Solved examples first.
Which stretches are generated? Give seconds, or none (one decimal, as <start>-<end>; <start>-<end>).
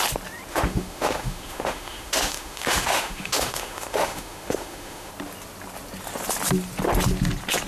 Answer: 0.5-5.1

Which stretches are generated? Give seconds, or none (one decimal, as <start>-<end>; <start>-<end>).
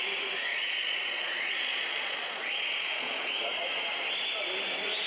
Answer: 0.5-3.6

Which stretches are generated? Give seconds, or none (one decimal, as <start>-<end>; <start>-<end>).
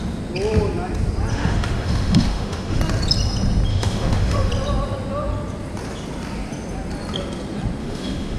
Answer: 1.3-2.8; 3.7-4.5; 7.8-8.4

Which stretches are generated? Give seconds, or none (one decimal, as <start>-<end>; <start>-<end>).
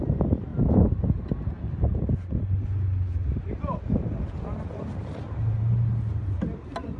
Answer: none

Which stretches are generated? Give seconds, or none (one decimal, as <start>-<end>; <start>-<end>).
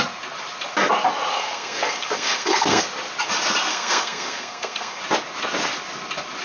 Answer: 1.3-2.8; 3.7-5.0